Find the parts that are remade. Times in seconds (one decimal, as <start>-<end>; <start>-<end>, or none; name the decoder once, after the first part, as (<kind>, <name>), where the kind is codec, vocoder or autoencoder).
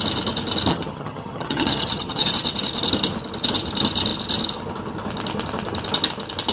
0.7-2.3 (vocoder, HiFi-GAN)